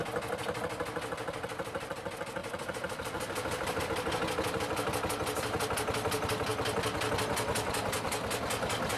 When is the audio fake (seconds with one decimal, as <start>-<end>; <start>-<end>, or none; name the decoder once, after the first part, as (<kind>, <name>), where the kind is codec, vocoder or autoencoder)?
2.4-3.8 (vocoder, BigVGAN v2)